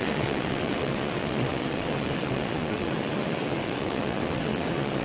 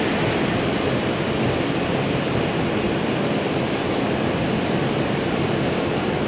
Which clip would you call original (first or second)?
second